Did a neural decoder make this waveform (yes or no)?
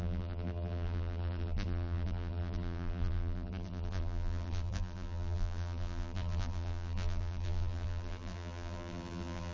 yes